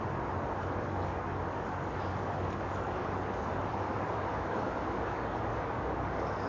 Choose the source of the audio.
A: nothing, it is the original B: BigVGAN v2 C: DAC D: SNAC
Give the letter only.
C